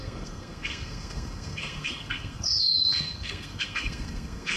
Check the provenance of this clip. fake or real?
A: fake